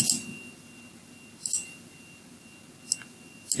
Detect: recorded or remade recorded